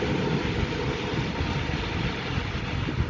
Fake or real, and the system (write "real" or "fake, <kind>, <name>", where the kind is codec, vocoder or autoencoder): real